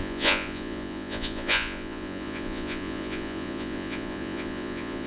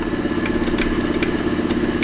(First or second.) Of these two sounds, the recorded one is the second